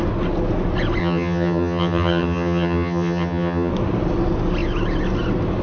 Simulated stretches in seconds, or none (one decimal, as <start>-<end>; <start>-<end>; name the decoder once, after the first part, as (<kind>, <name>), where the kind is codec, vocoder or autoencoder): 1.0-3.7 (vocoder, HiFi-GAN)